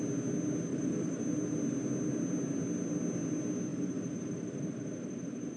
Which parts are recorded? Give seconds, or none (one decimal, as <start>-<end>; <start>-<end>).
0.0-0.7; 1.2-3.7